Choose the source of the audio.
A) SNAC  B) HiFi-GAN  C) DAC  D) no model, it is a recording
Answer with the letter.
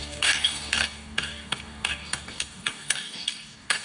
C